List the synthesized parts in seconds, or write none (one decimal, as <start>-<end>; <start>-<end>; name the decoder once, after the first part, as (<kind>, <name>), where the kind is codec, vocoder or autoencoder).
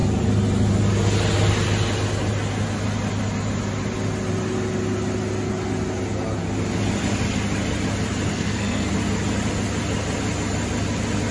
8.3-8.9 (codec, SNAC)